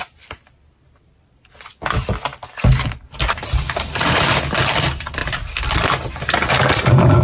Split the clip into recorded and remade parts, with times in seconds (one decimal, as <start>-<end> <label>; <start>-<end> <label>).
0.0-7.2 remade